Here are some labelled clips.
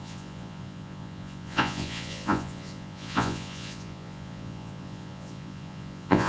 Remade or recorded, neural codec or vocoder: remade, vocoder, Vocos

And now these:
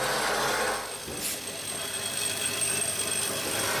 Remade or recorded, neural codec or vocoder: recorded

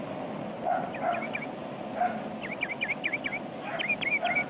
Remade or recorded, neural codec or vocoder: recorded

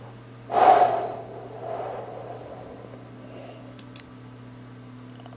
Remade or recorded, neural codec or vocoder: recorded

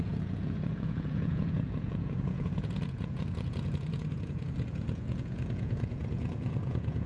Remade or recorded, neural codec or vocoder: remade, vocoder, Vocos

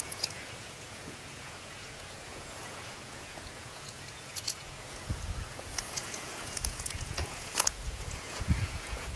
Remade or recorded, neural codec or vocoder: remade, vocoder, Vocos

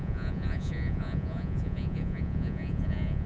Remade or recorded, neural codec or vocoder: remade, vocoder, Vocos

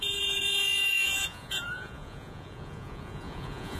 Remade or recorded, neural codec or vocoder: remade, vocoder, Vocos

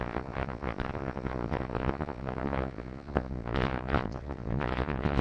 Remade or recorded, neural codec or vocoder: remade, vocoder, Vocos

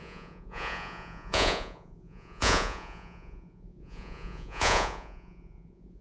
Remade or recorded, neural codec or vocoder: remade, vocoder, Vocos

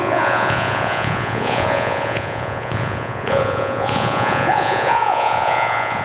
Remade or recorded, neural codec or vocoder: remade, vocoder, Vocos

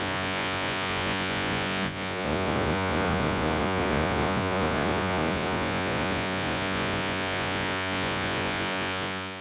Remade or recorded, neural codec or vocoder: remade, vocoder, Vocos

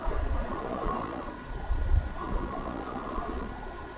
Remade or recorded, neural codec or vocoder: remade, vocoder, Vocos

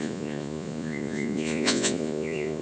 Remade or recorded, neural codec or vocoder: remade, vocoder, Vocos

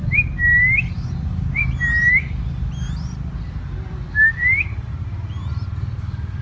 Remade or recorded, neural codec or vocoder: recorded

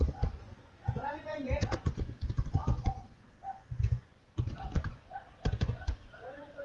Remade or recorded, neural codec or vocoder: remade, vocoder, Vocos